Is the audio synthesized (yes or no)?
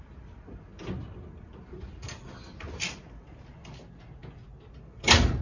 no